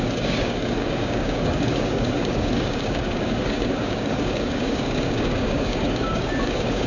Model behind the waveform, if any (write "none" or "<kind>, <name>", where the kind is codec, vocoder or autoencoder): codec, DAC